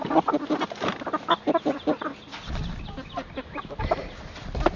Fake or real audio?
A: real